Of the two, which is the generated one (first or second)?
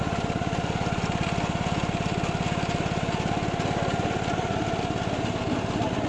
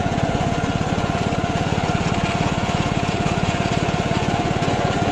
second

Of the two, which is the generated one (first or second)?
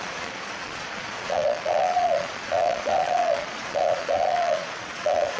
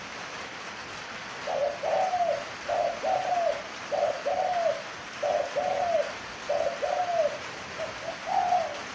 first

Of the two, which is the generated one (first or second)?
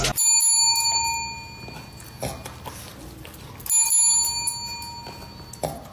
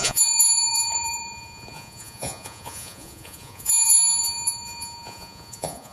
second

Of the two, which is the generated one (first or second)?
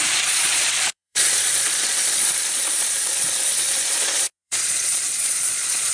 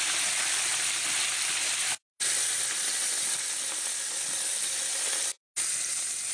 first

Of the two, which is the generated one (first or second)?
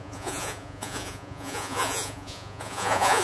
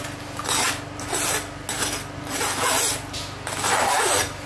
first